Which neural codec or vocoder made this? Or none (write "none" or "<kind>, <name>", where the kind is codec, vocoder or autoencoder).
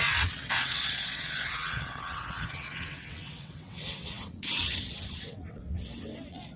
vocoder, WaveNeXt